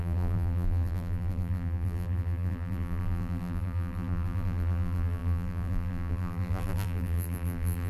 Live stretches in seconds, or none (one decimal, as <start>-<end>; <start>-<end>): none

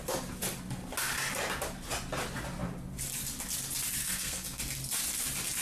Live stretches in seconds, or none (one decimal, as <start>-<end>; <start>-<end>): 0.0-4.0; 4.6-5.6

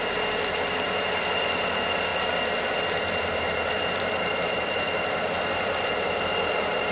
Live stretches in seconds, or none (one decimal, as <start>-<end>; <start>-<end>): 0.0-6.9

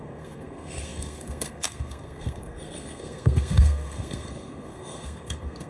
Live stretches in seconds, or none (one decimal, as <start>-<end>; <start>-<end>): none

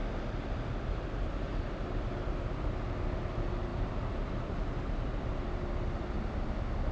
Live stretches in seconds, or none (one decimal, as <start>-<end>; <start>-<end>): 1.3-3.7

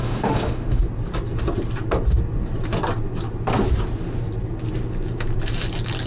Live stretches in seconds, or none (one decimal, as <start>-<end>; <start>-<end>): 0.8-6.1

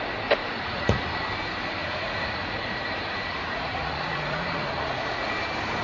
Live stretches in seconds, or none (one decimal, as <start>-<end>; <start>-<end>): 0.0-0.4; 1.1-1.8; 5.3-5.8

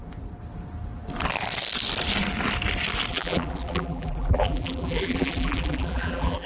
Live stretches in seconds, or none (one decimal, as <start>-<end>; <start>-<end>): 0.0-3.1